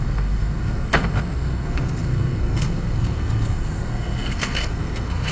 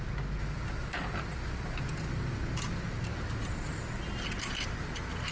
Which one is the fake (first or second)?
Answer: first